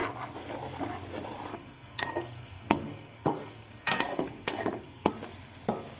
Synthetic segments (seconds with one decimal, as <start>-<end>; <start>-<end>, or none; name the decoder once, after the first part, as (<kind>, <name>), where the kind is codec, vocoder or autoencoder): 1.5-5.1 (codec, SNAC)